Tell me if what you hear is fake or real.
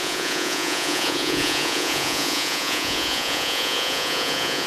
fake